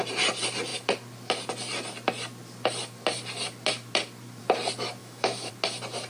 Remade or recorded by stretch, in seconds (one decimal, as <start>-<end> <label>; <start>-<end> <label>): 0.0-5.0 recorded; 5.0-5.5 remade; 5.5-6.1 recorded